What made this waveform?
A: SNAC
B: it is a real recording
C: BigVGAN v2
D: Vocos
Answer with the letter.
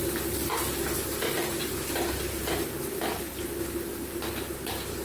B